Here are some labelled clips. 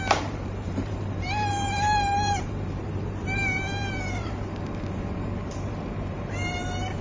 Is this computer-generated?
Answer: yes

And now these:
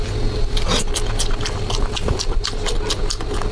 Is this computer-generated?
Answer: no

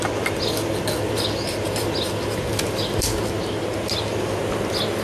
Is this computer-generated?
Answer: no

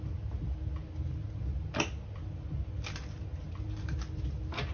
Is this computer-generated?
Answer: no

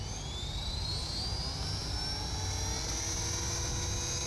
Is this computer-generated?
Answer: no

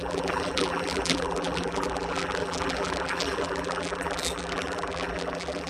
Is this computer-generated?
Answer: yes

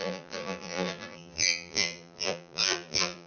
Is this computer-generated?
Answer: yes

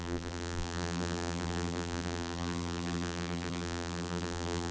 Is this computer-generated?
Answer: yes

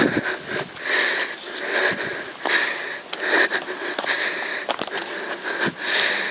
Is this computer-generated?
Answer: yes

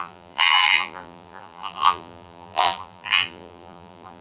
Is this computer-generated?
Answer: yes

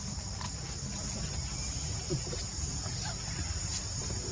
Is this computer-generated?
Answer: no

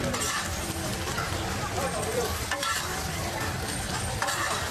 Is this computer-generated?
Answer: yes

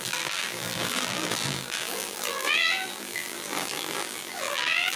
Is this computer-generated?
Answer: yes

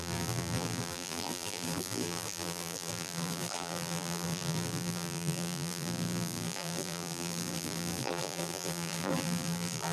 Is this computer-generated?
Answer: yes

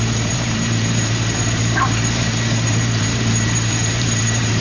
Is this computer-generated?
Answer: yes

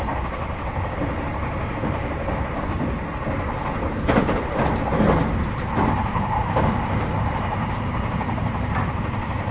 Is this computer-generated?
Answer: yes